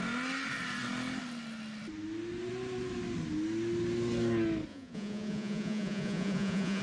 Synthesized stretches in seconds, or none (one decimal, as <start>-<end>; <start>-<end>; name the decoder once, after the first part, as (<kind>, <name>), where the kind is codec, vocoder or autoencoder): 4.7-6.8 (vocoder, Vocos)